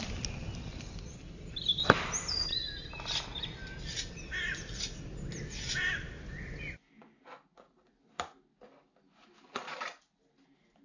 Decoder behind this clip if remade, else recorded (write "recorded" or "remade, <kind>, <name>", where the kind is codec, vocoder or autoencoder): recorded